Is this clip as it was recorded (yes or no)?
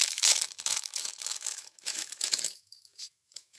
no